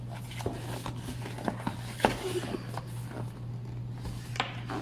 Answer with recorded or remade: remade